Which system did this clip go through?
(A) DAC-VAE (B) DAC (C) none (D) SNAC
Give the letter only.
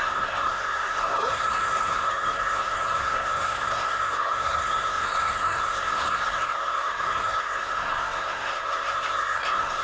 D